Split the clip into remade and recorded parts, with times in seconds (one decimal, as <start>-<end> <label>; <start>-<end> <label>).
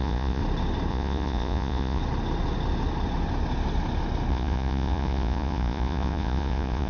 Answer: 0.0-0.4 remade; 0.4-0.9 recorded; 0.9-2.0 remade; 2.0-4.3 recorded; 4.3-6.9 remade